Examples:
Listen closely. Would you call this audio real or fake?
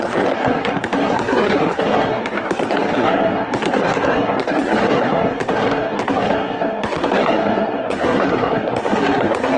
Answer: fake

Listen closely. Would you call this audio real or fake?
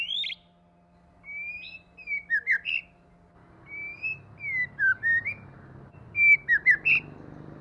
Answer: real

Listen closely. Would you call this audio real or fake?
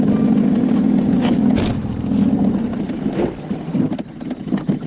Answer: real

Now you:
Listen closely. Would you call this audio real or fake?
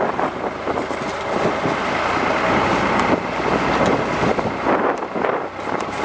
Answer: real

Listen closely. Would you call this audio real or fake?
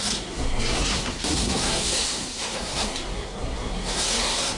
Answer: fake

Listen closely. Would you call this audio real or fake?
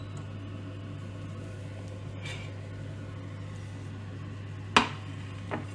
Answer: real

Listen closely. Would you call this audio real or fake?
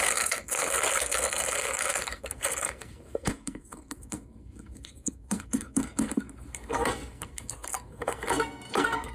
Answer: fake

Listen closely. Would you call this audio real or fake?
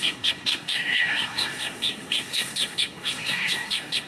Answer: fake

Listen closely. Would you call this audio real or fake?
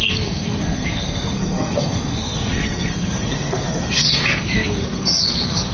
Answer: fake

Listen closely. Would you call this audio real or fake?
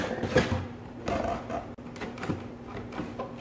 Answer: real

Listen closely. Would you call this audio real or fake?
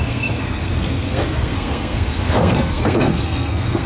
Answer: fake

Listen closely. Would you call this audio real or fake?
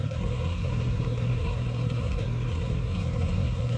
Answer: fake